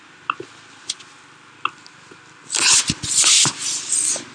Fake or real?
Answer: real